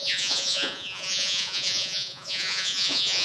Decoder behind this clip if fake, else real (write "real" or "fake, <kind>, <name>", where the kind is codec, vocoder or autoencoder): fake, vocoder, Vocos